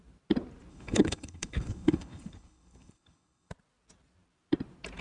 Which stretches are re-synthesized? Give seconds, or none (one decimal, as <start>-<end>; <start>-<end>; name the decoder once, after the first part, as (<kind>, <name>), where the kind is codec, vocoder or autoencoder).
0.7-3.5 (codec, HILCodec)